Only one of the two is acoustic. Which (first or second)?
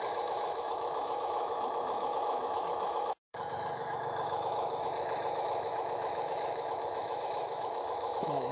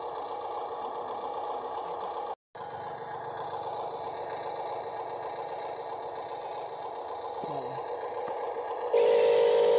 second